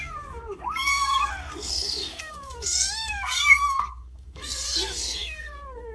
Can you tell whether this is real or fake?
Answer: fake